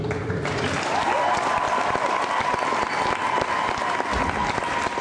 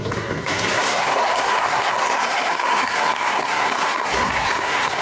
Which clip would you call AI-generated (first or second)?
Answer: second